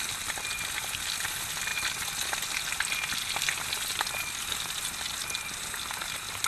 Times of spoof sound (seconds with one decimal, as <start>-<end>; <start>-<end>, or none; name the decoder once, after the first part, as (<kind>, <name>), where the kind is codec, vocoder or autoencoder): none